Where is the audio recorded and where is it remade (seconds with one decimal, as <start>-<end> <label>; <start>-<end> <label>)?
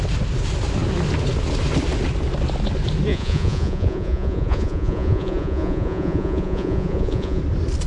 0.0-3.1 recorded; 3.1-7.4 remade; 7.4-7.9 recorded